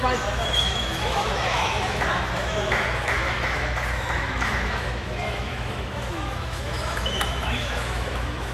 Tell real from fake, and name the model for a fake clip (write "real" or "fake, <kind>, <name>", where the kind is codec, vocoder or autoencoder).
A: fake, autoencoder, DAC-VAE